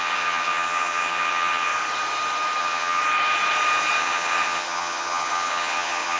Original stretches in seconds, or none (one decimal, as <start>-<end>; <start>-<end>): 1.7-2.6; 3.0-4.0